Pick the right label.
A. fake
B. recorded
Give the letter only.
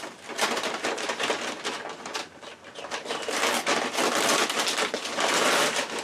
B